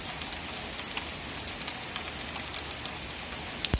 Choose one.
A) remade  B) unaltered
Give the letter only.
B